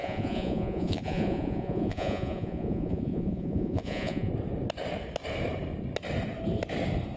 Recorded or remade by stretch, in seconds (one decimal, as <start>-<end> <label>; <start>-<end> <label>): 0.0-4.3 remade; 4.3-7.2 recorded